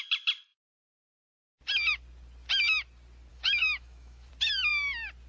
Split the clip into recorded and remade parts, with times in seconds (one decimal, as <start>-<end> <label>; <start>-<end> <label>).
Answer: 0.0-3.3 recorded; 3.3-4.3 remade; 4.3-5.3 recorded